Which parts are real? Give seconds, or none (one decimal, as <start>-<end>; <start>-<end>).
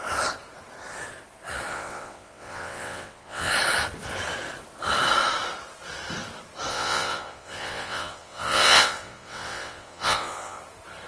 0.0-1.7; 3.5-6.7; 10.6-11.1